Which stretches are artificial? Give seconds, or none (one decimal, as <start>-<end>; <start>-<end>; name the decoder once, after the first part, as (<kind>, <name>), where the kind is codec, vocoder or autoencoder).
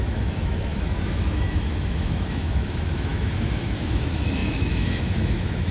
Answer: 0.0-5.7 (autoencoder, DAC-VAE)